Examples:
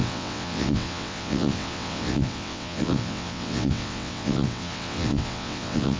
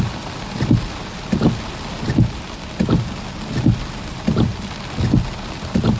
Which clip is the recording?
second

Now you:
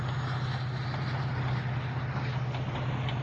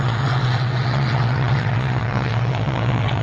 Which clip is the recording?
first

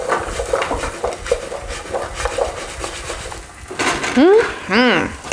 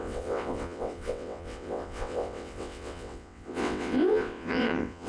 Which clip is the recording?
first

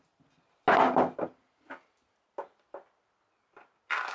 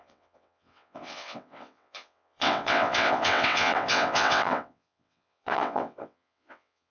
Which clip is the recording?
first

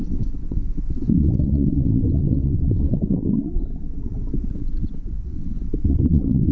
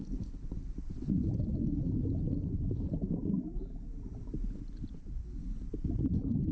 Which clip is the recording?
second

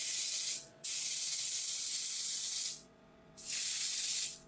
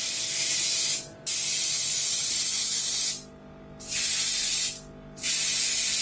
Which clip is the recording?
second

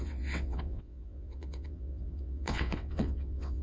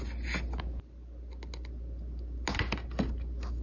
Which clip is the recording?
second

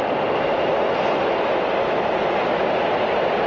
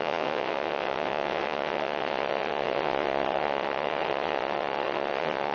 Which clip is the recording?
first